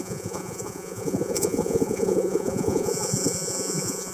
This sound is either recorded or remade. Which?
remade